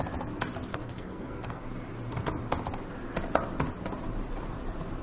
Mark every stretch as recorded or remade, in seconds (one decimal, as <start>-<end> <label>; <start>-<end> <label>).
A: 0.0-0.7 recorded; 0.7-1.6 remade; 1.6-5.0 recorded